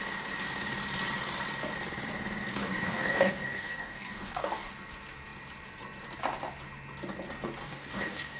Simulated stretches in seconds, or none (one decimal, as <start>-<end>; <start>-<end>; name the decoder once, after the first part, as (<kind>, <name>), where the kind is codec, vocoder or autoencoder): 2.5-4.7 (codec, DAC); 7.6-8.4